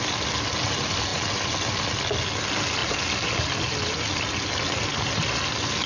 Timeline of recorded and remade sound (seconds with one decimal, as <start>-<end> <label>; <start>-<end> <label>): 0.0-5.9 recorded